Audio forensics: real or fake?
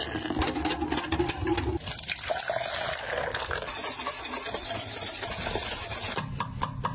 real